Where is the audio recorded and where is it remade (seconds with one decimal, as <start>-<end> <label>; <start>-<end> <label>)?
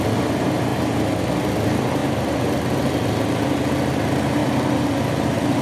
0.0-5.6 recorded